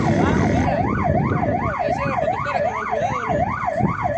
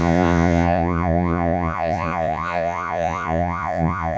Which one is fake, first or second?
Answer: second